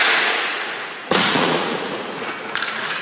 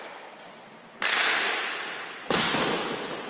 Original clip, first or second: second